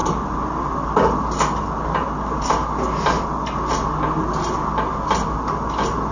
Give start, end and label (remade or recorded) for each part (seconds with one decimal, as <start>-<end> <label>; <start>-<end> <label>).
0.0-6.1 recorded